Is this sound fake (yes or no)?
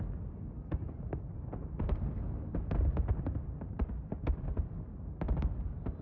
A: no